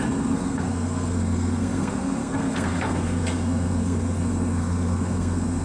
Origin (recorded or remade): remade